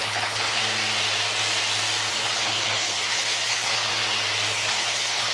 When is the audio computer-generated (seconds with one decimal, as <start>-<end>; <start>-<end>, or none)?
0.0-0.6; 2.1-3.9; 4.5-5.3